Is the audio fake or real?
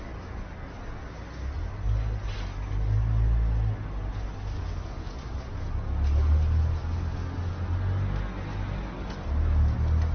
real